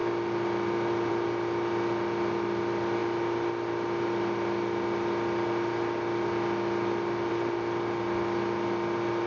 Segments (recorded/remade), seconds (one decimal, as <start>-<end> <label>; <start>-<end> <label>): 0.0-9.3 recorded